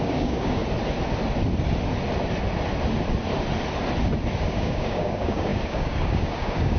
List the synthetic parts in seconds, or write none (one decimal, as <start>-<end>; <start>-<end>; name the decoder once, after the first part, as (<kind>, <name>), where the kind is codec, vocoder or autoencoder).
0.0-0.6 (codec, DAC); 4.4-6.8